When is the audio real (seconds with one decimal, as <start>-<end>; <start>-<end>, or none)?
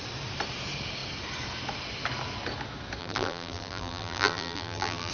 0.0-3.0